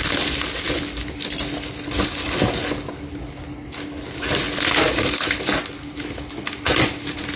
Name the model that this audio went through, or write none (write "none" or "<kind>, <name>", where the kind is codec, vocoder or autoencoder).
none